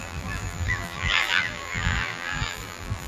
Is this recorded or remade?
remade